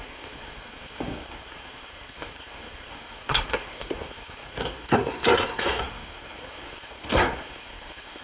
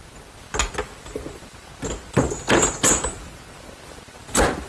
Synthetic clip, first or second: first